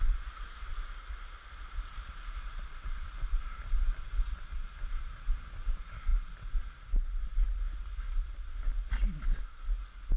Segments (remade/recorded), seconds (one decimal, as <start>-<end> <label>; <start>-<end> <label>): 0.0-10.2 recorded